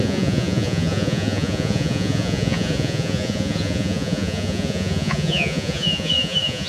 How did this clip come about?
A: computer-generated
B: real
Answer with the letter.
A